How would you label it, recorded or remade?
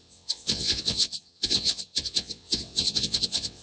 remade